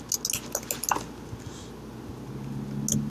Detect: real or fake real